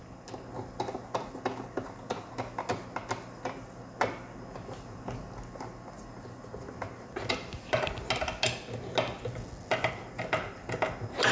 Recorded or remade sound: recorded